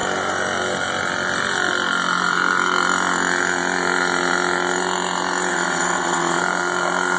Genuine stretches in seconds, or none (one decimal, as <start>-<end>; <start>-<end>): 0.0-5.5; 6.4-7.2